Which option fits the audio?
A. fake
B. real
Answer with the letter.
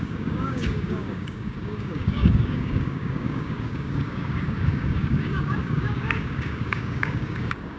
A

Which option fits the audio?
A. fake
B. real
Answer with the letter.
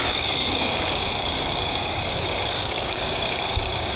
A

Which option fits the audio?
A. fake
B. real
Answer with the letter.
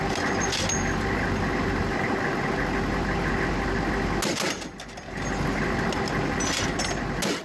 B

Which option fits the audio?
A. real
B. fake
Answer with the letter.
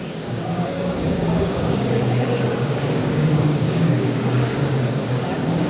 B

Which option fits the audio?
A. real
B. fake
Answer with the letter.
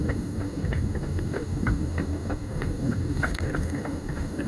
B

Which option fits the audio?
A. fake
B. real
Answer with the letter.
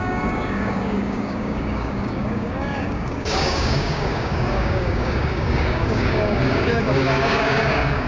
A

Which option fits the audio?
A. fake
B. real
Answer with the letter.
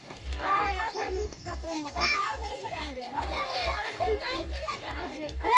A